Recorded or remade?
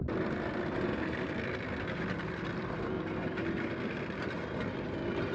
recorded